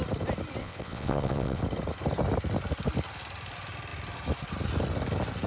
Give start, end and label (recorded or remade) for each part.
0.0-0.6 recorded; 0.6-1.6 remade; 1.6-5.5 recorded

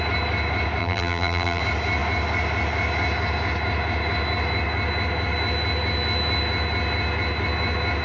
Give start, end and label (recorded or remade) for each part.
0.0-0.8 recorded; 0.8-1.6 remade; 1.6-8.0 recorded